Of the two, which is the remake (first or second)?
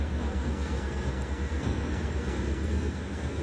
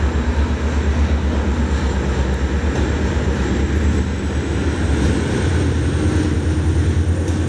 first